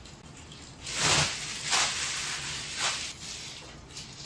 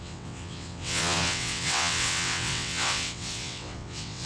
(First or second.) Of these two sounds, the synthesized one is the second